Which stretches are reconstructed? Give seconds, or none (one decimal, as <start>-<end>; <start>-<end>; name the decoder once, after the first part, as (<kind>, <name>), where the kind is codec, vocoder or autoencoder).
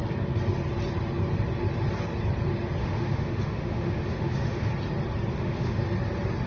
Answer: 2.8-4.7 (autoencoder, DAC-VAE); 5.3-5.8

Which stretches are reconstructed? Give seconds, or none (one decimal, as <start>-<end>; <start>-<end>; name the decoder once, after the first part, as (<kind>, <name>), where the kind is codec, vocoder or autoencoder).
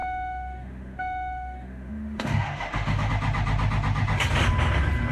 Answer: 0.0-3.1 (autoencoder, DAC-VAE)